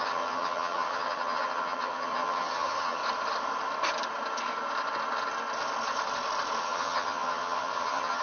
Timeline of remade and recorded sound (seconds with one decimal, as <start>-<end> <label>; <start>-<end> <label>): 0.0-3.0 remade; 3.0-6.6 recorded; 6.6-8.2 remade